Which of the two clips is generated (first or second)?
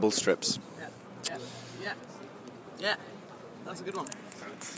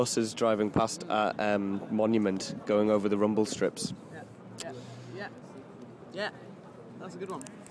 first